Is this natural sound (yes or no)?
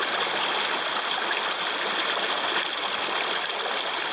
yes